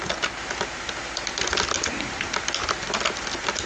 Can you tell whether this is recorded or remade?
recorded